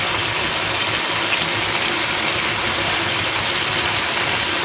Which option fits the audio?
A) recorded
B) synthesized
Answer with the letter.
A